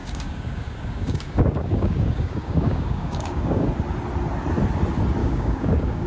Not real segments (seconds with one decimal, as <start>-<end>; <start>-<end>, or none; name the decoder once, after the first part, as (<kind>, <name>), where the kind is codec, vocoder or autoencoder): 0.0-3.7 (codec, DAC); 5.2-6.1